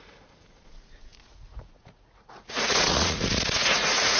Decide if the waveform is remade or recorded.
remade